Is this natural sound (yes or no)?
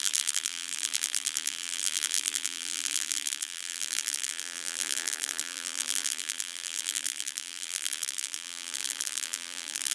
no